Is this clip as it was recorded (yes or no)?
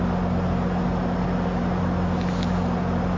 yes